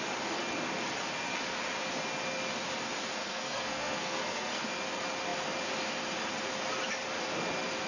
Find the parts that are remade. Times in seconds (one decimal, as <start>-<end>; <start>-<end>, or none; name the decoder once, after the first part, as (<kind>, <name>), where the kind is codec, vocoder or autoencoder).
3.2-4.6 (codec, SNAC)